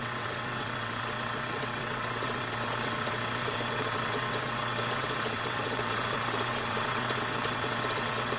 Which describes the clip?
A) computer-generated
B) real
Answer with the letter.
A